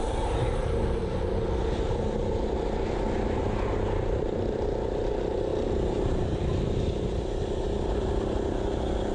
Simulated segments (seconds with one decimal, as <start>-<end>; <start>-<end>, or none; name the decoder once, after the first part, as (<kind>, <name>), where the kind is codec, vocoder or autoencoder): none